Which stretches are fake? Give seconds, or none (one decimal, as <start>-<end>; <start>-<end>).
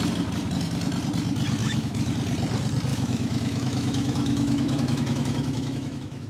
1.6-2.1; 2.9-6.3